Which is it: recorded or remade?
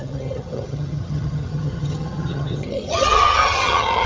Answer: remade